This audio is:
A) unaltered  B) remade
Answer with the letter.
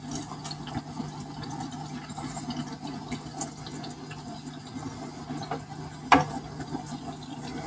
A